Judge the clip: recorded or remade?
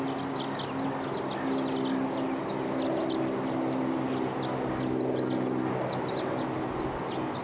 recorded